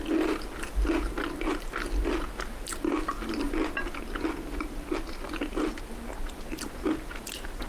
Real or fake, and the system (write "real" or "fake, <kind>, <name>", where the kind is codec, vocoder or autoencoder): real